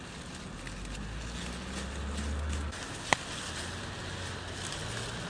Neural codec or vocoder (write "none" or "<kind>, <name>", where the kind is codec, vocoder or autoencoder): none